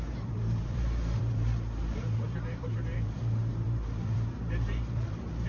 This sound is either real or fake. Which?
fake